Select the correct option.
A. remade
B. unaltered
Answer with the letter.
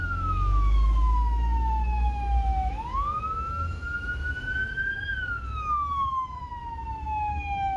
A